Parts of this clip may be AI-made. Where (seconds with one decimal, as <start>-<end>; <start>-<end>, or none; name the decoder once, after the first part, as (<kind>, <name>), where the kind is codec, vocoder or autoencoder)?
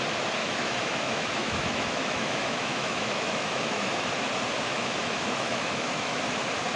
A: 0.4-4.1 (autoencoder, DAC-VAE); 4.7-6.2